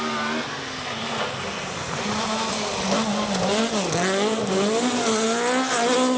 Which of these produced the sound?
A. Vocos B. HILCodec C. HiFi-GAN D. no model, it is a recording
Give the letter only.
D